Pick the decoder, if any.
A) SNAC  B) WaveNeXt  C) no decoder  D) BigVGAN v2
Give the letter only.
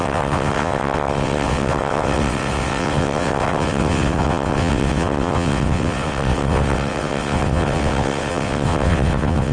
B